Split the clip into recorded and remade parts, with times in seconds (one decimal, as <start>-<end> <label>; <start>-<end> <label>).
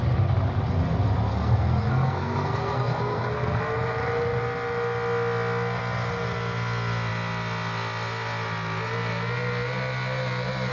0.0-1.3 recorded; 1.3-3.6 remade; 3.6-10.7 recorded